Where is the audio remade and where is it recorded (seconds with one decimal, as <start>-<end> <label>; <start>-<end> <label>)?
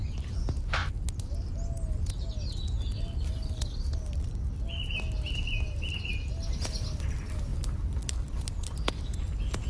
0.0-9.7 recorded